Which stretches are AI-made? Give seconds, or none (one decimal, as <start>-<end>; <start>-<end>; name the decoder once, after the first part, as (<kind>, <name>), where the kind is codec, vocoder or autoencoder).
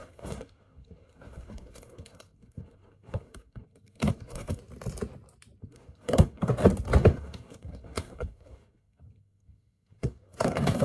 0.0-4.6 (codec, SNAC); 5.6-6.5; 7.0-10.8